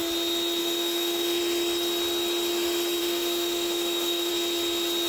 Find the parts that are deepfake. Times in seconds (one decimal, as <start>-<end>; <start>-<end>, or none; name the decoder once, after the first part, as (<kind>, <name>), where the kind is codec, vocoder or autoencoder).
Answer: 0.6-1.4 (autoencoder, DAC-VAE); 3.0-4.3